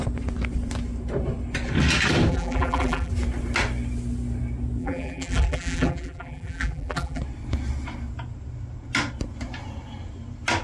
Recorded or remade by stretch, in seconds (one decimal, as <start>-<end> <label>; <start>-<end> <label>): 0.0-2.3 recorded; 2.3-3.1 remade; 3.1-4.8 recorded; 4.8-7.2 remade; 7.2-10.6 recorded